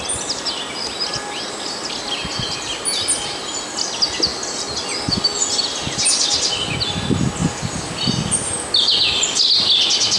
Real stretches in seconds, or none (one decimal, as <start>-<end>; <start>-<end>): 0.0-10.2